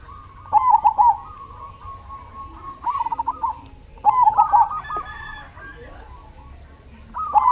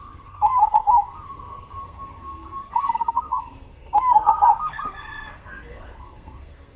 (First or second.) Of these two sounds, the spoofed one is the second